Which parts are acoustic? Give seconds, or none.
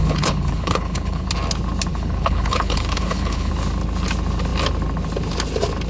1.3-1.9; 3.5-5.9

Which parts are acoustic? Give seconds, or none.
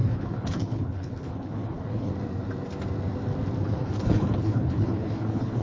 2.1-3.6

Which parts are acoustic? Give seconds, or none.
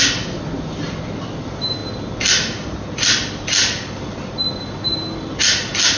0.0-6.0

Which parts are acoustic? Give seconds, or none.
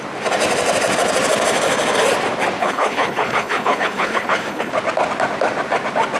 0.0-2.6; 4.7-6.2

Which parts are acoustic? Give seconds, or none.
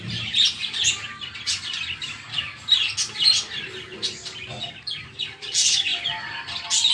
0.0-6.9